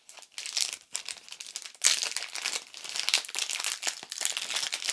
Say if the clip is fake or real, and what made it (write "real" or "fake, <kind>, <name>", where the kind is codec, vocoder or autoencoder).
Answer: real